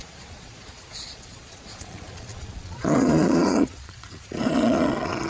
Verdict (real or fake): fake